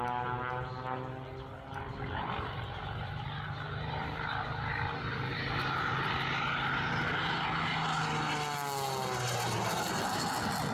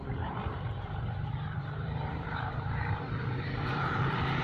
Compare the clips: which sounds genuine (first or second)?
first